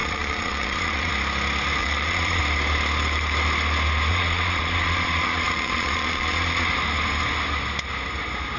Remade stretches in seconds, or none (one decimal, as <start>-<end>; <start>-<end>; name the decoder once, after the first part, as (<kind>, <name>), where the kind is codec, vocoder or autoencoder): 0.0-1.1 (vocoder, Vocos); 1.8-2.4; 4.1-6.7